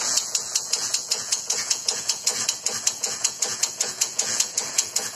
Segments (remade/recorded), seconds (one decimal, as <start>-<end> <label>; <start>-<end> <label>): 0.0-2.3 remade; 2.3-2.9 recorded; 2.9-5.2 remade